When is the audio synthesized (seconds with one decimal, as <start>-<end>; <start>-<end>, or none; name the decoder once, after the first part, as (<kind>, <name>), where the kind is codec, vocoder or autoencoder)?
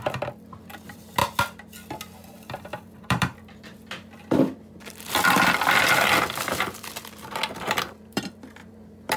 0.0-1.2 (vocoder, BigVGAN v2); 2.3-9.2